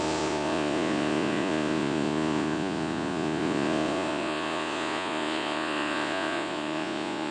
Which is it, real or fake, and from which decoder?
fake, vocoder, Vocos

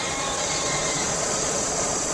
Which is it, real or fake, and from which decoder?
fake, vocoder, Vocos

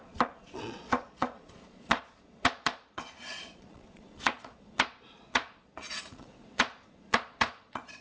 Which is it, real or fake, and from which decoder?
fake, vocoder, Vocos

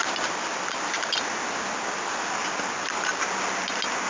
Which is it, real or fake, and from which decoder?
real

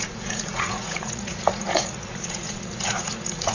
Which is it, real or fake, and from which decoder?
fake, vocoder, Vocos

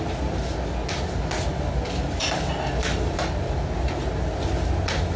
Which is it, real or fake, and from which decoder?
real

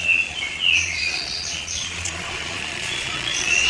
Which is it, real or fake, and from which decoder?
fake, vocoder, Vocos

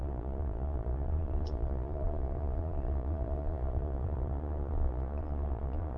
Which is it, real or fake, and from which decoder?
fake, vocoder, Vocos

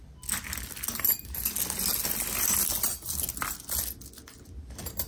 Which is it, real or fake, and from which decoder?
real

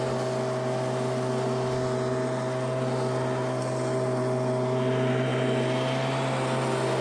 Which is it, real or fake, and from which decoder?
real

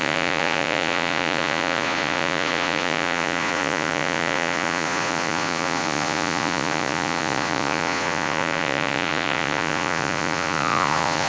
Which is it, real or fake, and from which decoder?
fake, vocoder, Vocos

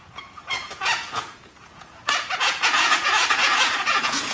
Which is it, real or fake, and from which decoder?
fake, vocoder, Vocos